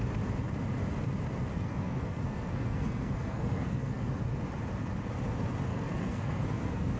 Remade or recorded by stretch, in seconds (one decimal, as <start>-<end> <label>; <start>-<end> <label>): 0.0-1.5 recorded; 1.5-4.1 remade; 4.1-5.7 recorded; 5.7-7.0 remade